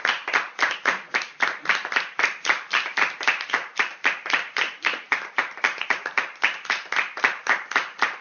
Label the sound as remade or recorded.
remade